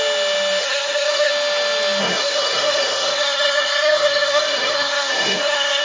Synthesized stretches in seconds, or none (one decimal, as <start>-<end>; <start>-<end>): 0.6-1.3; 2.0-5.8